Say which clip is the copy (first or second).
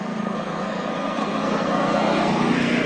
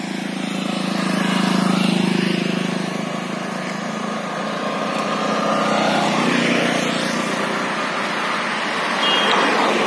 first